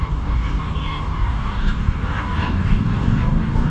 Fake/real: fake